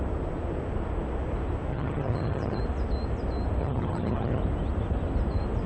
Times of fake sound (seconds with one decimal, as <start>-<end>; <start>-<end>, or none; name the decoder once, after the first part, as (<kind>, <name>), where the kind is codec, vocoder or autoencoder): 1.7-2.6 (vocoder, HiFi-GAN); 3.6-4.4